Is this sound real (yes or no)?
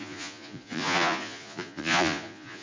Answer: no